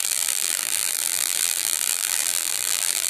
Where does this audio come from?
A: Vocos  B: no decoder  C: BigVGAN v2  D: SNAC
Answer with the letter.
C